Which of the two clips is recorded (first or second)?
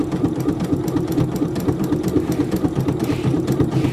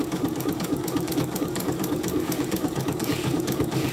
first